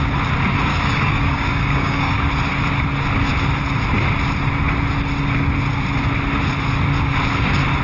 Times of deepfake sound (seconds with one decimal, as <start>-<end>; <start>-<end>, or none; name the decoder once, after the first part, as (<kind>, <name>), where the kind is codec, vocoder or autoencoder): 0.7-2.3 (codec, DAC)